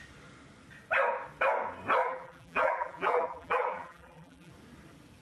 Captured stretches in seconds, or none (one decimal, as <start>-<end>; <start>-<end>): 0.0-2.0; 4.5-5.2